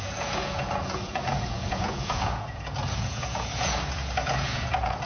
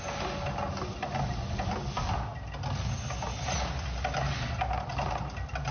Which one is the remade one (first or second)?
first